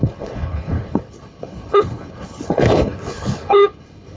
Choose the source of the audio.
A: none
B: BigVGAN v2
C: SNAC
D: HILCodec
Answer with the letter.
D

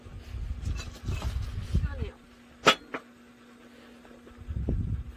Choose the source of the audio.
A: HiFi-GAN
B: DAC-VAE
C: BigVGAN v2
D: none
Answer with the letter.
D